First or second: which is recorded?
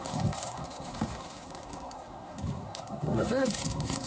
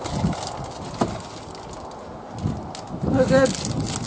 second